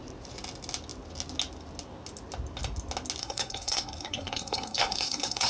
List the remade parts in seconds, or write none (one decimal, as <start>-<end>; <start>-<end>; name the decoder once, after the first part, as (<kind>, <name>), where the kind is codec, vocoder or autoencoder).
3.2-5.5 (codec, SNAC)